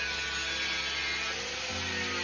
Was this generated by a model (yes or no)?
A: no